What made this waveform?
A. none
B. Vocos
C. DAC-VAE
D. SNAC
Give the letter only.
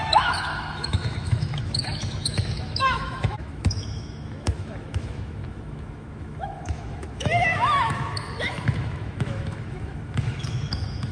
C